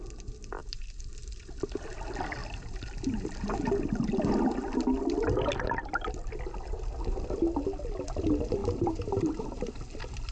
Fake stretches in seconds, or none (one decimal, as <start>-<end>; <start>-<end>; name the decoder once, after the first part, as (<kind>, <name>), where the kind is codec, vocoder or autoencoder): 0.6-1.4 (vocoder, BigVGAN v2); 8.6-9.7

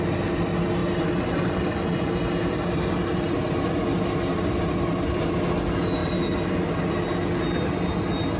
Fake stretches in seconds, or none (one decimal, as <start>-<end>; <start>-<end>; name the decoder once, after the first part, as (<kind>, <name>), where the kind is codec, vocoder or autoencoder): 0.8-5.4 (vocoder, BigVGAN v2); 6.0-6.5